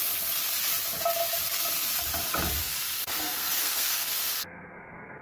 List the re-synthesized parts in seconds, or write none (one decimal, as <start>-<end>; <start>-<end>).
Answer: 2.6-5.2